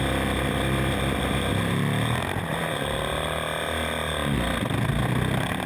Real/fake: real